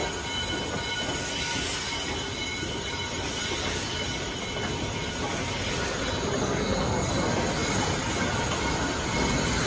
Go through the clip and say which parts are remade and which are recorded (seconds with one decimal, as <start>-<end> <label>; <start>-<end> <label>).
0.0-6.4 recorded; 6.4-7.1 remade; 7.1-9.7 recorded